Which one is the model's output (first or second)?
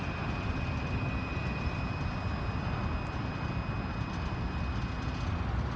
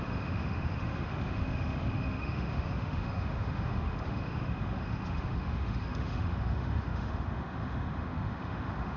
second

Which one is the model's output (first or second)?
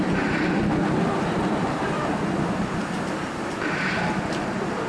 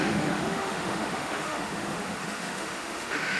second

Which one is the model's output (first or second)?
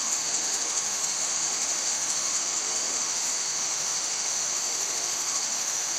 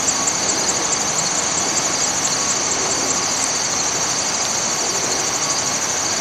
first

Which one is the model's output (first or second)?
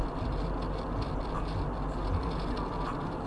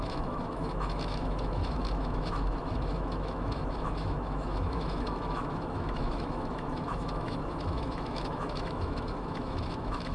second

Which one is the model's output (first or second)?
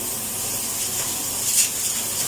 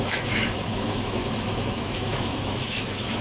second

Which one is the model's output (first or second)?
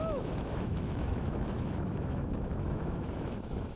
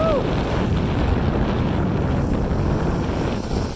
first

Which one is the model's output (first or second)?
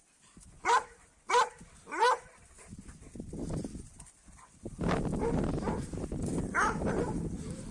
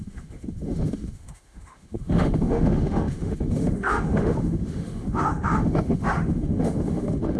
second